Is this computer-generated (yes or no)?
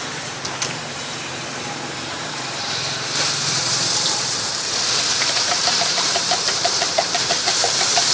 yes